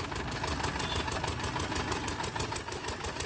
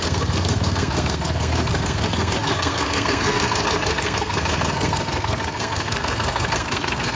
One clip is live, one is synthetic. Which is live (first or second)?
first